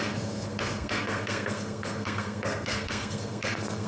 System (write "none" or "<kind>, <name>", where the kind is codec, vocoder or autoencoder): codec, SNAC